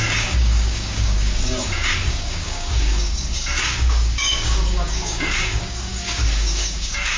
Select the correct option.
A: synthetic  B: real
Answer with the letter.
A